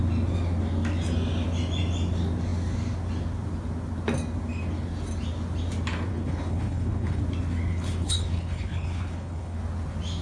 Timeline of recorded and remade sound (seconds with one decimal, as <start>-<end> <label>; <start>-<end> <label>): 0.0-6.1 recorded; 6.1-7.2 remade; 7.2-7.7 recorded; 7.7-9.6 remade; 9.6-10.2 recorded